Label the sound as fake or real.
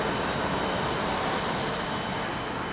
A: real